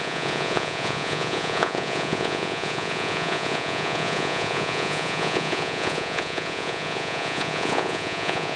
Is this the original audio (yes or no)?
no